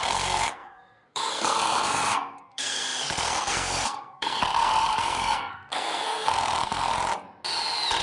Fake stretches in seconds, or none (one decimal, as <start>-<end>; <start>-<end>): 0.0-6.9